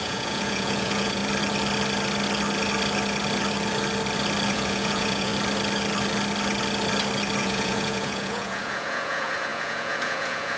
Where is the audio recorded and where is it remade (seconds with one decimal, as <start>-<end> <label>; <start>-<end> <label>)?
0.0-1.2 remade; 1.2-4.5 recorded; 4.5-5.3 remade; 5.3-7.4 recorded; 7.4-10.6 remade